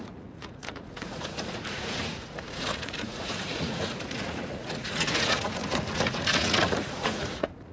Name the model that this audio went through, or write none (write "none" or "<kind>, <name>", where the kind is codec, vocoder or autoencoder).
vocoder, Vocos